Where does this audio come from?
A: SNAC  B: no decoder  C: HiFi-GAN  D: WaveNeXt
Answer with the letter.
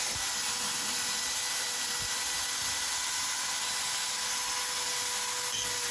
B